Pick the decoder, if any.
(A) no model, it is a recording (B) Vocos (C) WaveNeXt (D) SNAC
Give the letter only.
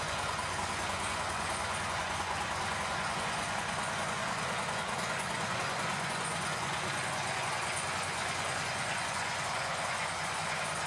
B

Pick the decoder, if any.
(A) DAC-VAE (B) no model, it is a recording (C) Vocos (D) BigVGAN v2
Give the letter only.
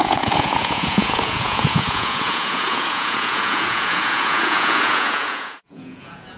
C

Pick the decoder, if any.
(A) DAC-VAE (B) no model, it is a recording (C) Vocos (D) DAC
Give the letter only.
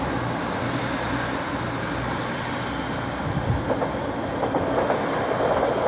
B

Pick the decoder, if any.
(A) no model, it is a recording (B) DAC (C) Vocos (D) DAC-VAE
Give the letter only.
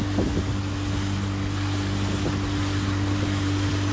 A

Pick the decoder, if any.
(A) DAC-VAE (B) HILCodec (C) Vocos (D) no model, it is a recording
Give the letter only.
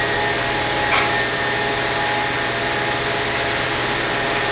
D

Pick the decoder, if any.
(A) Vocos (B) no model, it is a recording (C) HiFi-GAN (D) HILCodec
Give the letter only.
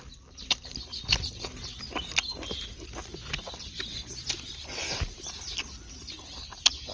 B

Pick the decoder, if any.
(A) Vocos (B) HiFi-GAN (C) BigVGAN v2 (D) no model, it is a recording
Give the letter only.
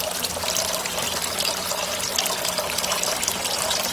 D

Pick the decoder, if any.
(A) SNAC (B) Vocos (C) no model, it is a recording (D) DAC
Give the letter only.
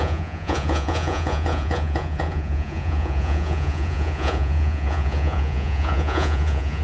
B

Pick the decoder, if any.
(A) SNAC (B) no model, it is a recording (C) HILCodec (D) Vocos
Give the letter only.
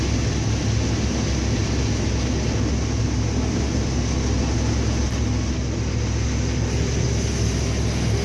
B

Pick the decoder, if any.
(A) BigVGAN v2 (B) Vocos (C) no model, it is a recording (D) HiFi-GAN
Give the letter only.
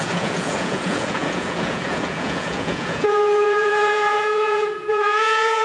B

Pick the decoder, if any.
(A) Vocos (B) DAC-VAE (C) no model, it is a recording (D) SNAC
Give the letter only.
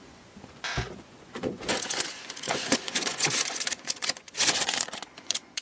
A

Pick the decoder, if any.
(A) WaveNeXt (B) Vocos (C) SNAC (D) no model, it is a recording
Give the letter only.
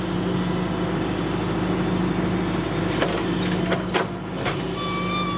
D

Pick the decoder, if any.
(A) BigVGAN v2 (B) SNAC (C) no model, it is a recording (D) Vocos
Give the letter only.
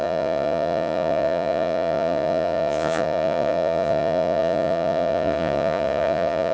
D